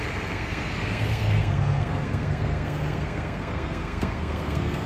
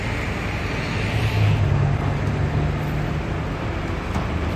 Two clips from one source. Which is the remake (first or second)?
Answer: first